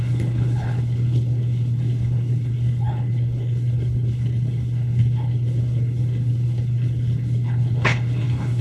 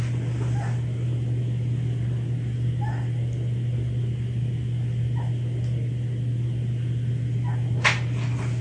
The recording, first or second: second